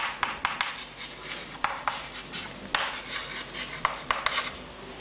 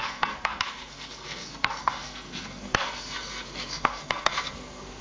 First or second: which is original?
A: first